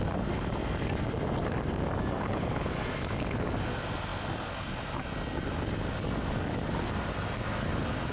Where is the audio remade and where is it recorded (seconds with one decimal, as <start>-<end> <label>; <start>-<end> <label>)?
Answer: 0.0-8.1 recorded